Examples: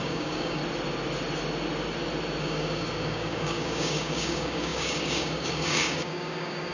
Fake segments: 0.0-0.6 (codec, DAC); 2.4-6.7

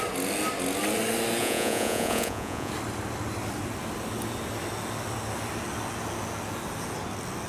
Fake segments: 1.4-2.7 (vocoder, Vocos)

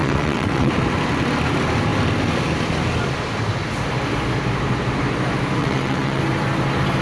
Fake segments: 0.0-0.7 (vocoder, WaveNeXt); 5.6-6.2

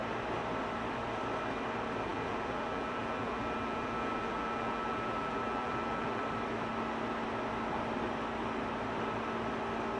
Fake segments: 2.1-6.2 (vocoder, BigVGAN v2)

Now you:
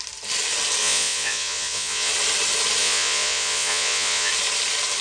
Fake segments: 0.8-2.1 (vocoder, Vocos); 2.8-4.3

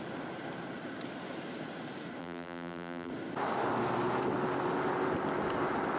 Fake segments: 2.2-3.1 (vocoder, BigVGAN v2)

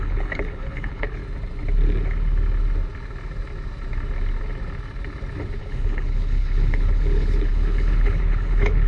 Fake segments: 0.0-1.2 (codec, HILCodec); 5.6-8.9

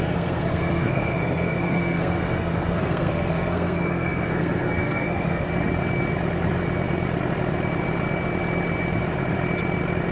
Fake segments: 0.0-5.5 (codec, SNAC)